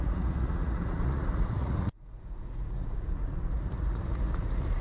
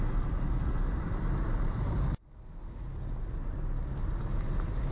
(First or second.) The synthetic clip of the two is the first